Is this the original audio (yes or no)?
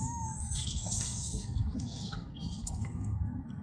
no